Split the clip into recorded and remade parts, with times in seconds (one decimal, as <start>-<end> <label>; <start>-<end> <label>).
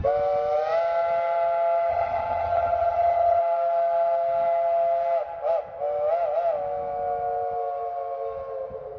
0.0-1.9 recorded; 1.9-3.4 remade; 3.4-9.0 recorded